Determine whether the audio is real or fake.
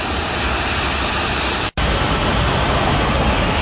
real